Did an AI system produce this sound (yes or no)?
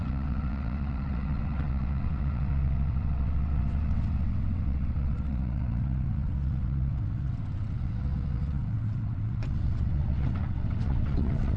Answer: yes